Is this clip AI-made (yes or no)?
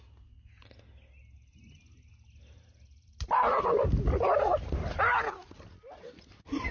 no